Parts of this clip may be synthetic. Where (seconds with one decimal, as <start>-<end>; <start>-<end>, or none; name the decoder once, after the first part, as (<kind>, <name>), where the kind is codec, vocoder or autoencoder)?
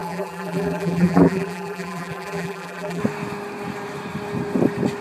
0.0-3.0 (vocoder, BigVGAN v2)